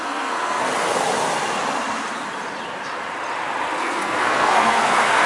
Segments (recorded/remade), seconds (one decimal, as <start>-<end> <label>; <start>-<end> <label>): 0.0-0.7 remade; 0.7-3.8 recorded; 3.8-5.3 remade